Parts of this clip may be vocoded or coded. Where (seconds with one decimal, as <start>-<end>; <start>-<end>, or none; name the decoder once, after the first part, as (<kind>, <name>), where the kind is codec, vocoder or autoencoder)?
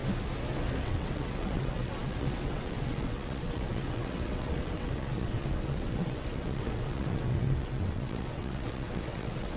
0.8-9.6 (vocoder, WaveNeXt)